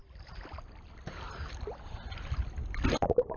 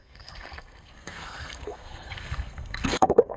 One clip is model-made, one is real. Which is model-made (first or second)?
second